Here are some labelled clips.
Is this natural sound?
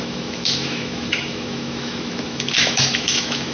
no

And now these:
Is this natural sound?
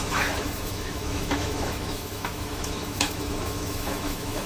no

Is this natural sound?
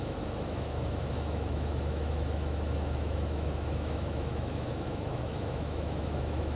no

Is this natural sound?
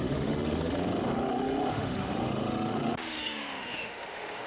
no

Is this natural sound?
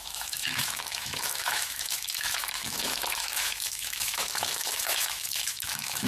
no